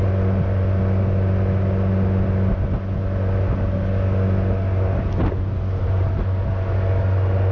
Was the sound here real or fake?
real